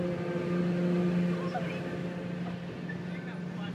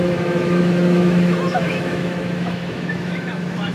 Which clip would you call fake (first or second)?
second